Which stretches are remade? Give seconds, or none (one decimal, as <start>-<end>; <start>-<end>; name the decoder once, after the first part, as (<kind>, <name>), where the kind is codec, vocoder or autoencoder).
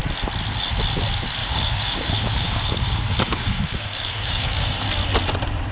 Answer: 1.4-4.8 (codec, DAC)